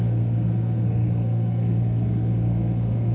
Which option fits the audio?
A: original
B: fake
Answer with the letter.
B